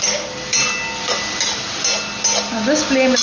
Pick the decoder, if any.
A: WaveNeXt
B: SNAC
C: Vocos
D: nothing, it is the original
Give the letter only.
D